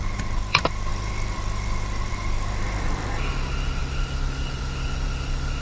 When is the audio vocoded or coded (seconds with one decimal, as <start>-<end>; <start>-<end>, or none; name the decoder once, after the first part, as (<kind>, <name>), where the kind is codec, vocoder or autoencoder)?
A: 0.0-5.6 (vocoder, BigVGAN v2)